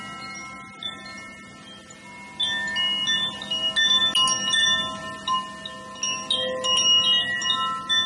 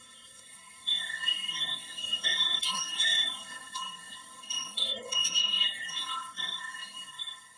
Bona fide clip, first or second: first